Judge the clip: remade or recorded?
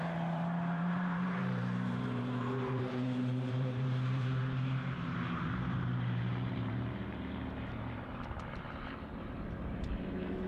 remade